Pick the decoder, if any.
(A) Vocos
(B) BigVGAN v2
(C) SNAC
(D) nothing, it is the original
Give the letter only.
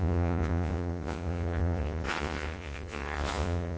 A